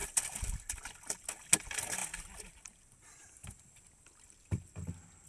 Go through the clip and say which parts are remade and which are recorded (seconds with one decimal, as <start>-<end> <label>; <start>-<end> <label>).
0.0-5.3 recorded